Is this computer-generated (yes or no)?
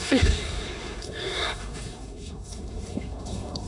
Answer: yes